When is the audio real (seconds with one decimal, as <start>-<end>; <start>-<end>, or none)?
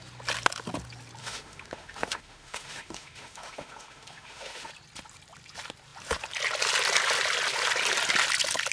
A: 0.0-1.2; 4.7-8.7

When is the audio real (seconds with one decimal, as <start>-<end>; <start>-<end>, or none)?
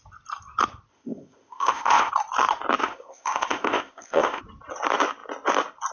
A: 0.0-0.9; 2.1-2.8; 4.4-5.9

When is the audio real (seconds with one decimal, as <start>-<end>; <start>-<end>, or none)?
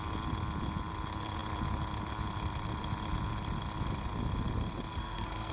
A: 0.0-4.9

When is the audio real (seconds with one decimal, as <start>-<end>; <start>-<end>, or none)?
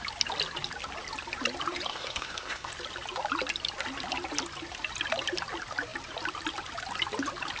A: 0.0-1.9; 2.7-7.6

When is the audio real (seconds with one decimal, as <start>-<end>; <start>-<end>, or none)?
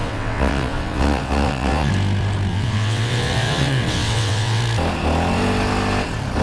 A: 1.9-2.5; 4.6-6.4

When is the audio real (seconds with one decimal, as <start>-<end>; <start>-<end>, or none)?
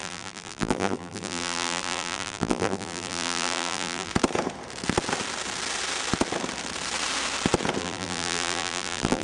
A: 4.1-7.8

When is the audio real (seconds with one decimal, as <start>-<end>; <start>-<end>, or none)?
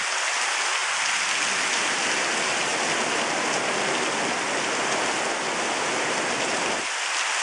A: 0.0-7.4